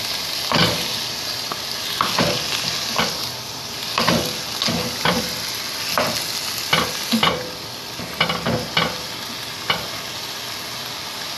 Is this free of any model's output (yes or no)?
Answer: yes